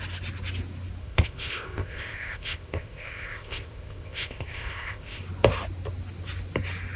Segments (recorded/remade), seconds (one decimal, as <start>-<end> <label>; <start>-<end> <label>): 0.0-1.0 recorded; 1.0-5.2 remade; 5.2-7.0 recorded